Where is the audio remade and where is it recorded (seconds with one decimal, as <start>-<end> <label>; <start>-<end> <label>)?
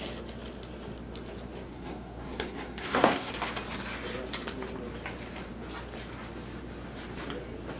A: 0.0-1.7 recorded; 1.7-3.3 remade; 3.3-7.8 recorded